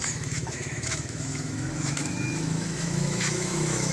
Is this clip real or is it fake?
fake